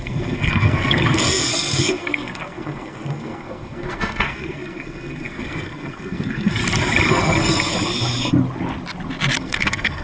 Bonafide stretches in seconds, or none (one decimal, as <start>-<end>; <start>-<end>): 6.6-7.1; 7.7-9.4